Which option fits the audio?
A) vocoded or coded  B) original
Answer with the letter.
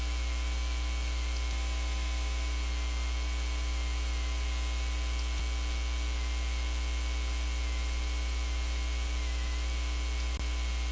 B